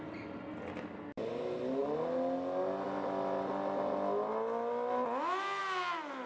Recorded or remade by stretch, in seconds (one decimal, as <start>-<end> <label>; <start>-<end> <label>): 0.0-6.3 recorded